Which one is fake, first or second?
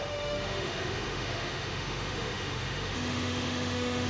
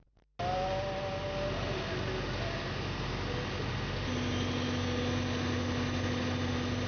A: first